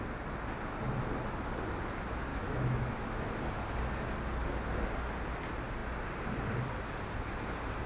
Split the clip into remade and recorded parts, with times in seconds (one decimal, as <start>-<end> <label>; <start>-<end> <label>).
0.0-2.3 recorded; 2.3-2.9 remade; 2.9-7.9 recorded